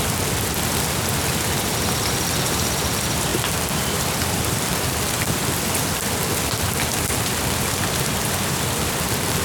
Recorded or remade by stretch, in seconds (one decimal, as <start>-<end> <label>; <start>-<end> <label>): 0.0-9.4 remade